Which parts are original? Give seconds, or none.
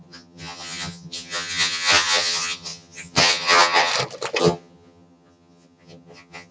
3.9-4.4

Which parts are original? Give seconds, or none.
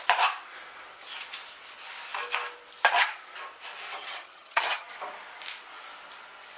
0.0-4.0; 4.9-6.6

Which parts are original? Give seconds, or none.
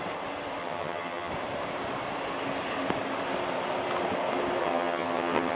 0.0-0.6; 1.3-4.6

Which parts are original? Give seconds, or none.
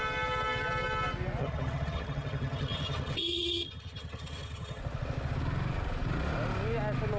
0.0-1.4; 4.8-7.2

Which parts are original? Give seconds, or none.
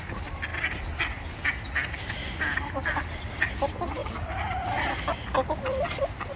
0.0-6.4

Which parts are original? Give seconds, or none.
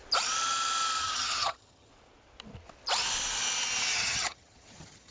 0.0-1.0; 1.9-3.9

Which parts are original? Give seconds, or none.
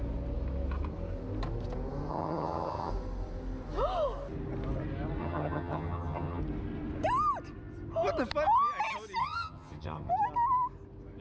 0.0-2.1; 2.9-5.2; 6.4-9.2; 10.1-11.2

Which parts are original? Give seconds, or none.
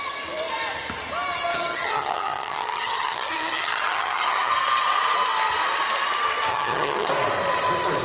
0.0-1.5; 4.5-6.5; 7.1-8.0